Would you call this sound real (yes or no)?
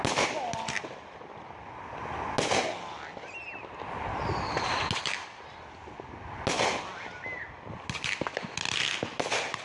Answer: yes